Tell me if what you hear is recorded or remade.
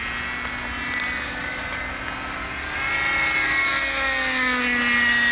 recorded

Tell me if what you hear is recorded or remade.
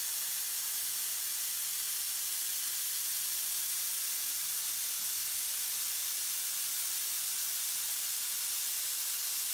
recorded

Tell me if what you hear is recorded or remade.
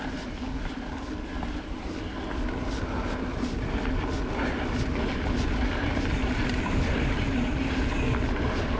recorded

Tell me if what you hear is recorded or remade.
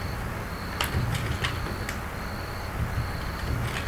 recorded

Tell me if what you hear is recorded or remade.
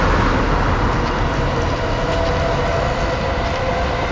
recorded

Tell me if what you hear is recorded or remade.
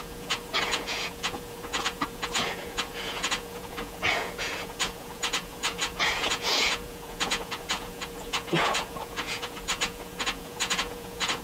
remade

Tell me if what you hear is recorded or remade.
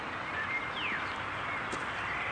recorded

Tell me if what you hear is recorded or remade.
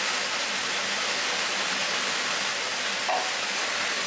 recorded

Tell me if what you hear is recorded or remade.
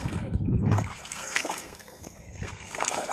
remade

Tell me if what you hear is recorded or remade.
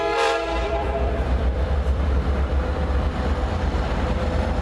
remade